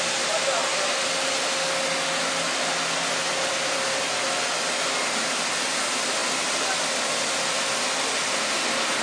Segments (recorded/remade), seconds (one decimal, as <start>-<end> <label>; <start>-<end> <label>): 0.0-9.0 recorded